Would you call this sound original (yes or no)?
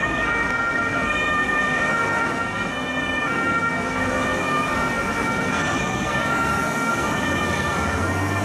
no